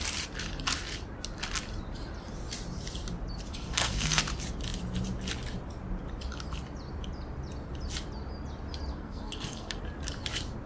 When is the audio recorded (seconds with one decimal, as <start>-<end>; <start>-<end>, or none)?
0.0-3.5; 4.2-8.9; 9.8-10.7